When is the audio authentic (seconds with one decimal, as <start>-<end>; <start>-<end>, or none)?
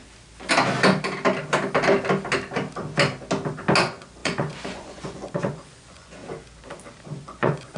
0.0-3.8; 6.2-7.0